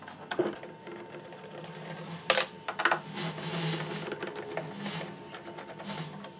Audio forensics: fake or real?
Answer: real